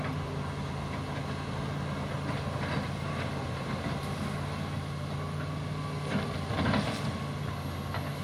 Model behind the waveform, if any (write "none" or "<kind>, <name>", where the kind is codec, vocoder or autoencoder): none